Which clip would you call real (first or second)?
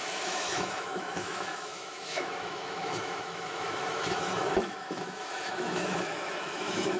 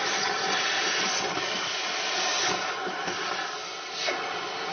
second